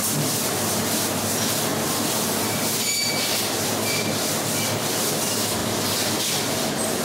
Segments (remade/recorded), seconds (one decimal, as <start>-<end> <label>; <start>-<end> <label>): 0.0-7.0 recorded